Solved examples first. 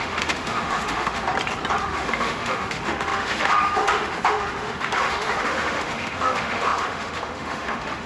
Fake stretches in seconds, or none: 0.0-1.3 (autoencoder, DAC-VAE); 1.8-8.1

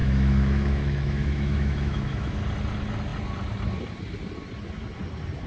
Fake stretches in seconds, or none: 0.0-2.4 (autoencoder, DAC-VAE)

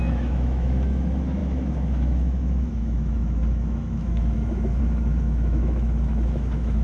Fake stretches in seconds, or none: 0.0-6.8 (autoencoder, DAC-VAE)

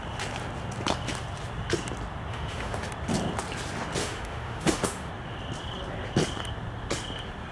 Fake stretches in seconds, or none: 2.3-2.9 (autoencoder, DAC-VAE); 4.0-5.1

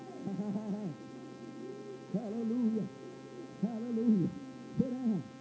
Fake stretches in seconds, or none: 0.0-2.4 (autoencoder, DAC-VAE)

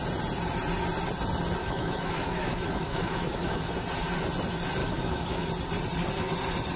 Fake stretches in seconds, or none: 1.6-3.7 (autoencoder, DAC-VAE); 4.8-5.5

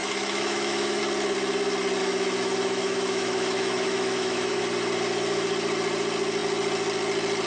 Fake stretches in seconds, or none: 0.0-1.0 (autoencoder, DAC-VAE); 2.0-4.6